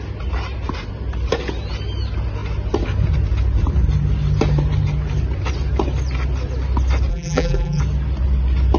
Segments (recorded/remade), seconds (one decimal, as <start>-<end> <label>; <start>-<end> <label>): 0.0-7.1 recorded; 7.1-7.8 remade; 7.8-8.8 recorded